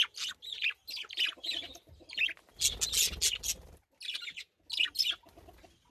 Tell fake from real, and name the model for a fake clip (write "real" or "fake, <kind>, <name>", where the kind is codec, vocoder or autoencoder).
real